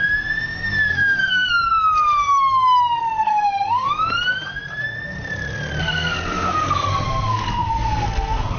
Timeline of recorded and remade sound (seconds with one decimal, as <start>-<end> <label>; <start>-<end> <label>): 0.0-0.9 recorded; 0.9-1.5 remade; 1.5-3.2 recorded; 3.2-3.9 remade; 3.9-5.8 recorded; 5.8-8.6 remade